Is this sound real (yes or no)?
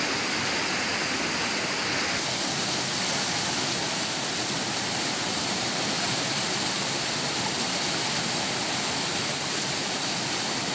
yes